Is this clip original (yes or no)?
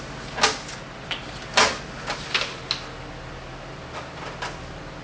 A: yes